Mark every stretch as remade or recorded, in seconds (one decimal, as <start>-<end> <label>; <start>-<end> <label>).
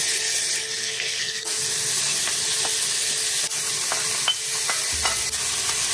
0.0-0.8 recorded; 0.8-1.6 remade; 1.6-5.9 recorded